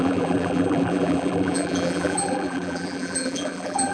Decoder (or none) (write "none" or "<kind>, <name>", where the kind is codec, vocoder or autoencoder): vocoder, BigVGAN v2